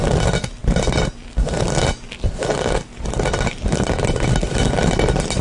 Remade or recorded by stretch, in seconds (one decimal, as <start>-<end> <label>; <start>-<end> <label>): 0.0-5.4 recorded